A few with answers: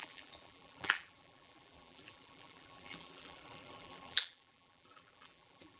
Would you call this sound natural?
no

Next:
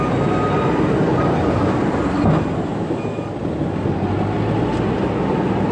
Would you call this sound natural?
yes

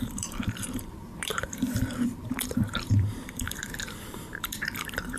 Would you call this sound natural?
no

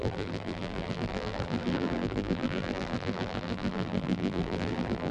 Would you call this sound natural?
no